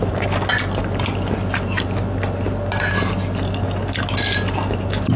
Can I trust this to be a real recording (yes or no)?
yes